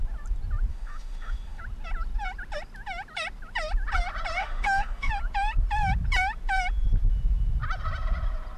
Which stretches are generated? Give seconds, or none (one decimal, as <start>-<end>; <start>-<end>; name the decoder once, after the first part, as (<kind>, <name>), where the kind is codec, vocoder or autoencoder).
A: 0.7-1.6 (autoencoder, DAC-VAE); 4.4-5.1